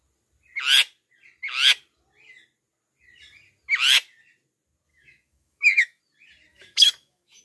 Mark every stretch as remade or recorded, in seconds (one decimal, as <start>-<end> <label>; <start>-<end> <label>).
0.0-4.9 recorded; 4.9-6.0 remade; 6.0-6.5 recorded; 6.5-7.4 remade